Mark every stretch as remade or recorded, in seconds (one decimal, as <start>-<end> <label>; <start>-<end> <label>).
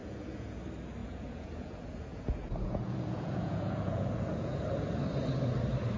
0.0-0.6 remade; 0.6-1.0 recorded; 1.0-4.6 remade; 4.6-6.0 recorded